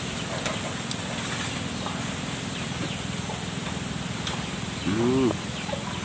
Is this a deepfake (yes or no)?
no